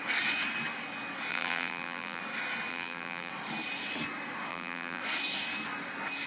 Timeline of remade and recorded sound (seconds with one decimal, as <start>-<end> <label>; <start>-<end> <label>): 0.0-1.3 recorded; 1.3-2.2 remade; 2.2-2.7 recorded; 2.7-3.3 remade; 3.3-4.5 recorded; 4.5-5.0 remade; 5.0-6.3 recorded